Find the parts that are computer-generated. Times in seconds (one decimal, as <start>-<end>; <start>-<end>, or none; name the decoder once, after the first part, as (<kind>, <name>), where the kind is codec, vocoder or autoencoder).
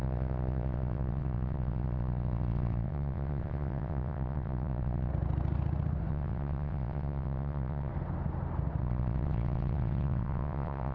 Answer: 0.0-5.1 (vocoder, WaveNeXt); 6.1-7.9; 8.8-10.9